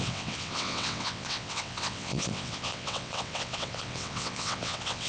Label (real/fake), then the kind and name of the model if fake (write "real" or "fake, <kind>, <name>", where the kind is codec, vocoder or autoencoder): fake, vocoder, WaveNeXt